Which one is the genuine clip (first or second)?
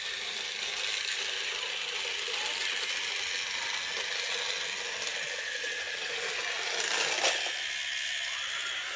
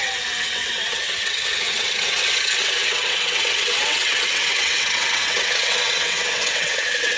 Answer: first